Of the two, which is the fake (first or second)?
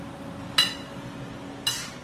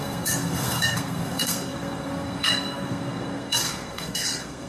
second